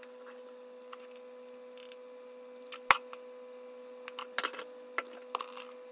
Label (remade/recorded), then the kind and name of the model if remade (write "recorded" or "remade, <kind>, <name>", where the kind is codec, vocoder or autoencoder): recorded